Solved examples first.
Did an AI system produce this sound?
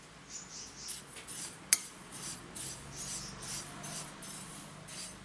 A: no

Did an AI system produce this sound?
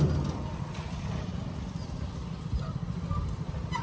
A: no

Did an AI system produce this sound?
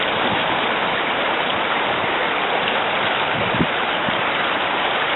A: yes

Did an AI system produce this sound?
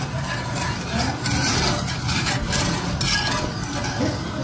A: no